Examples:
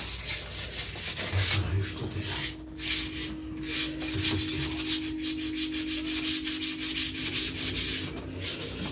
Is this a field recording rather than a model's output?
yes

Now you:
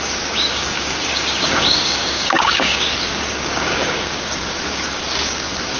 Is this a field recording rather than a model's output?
no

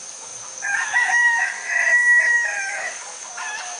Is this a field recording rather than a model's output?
no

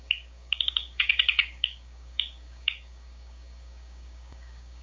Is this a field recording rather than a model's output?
no